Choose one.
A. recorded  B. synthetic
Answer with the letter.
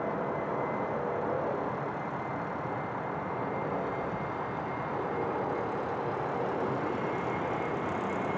A